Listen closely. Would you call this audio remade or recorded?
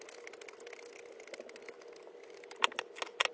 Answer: recorded